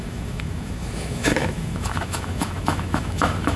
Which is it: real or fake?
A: fake